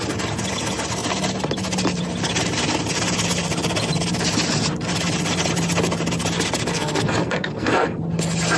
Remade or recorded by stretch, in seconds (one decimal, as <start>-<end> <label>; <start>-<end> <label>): 0.0-6.7 recorded; 6.7-8.0 remade; 8.0-8.6 recorded

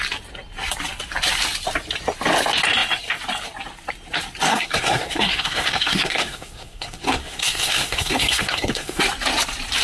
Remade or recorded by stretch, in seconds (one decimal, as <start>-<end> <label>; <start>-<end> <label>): 0.0-4.5 recorded; 4.5-9.0 remade; 9.0-9.8 recorded